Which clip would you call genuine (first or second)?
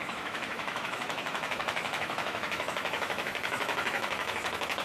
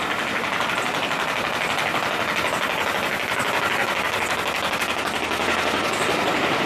second